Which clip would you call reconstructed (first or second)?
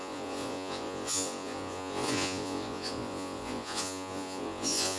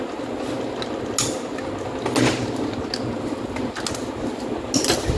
first